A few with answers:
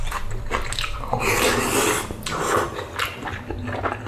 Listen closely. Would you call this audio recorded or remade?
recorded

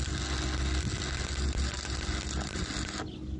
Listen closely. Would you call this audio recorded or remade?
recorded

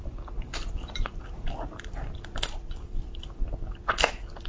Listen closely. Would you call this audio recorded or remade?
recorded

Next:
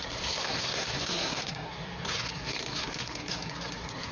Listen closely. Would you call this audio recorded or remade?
remade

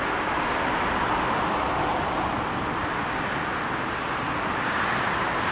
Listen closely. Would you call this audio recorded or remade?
recorded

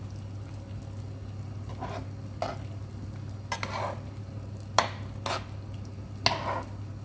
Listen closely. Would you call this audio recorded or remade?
recorded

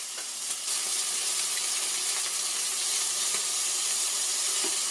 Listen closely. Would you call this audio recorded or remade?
recorded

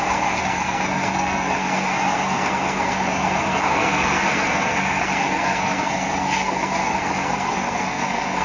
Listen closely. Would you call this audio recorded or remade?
remade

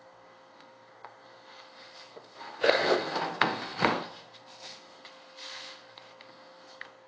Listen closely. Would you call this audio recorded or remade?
remade